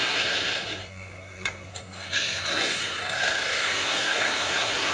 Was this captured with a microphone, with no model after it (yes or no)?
no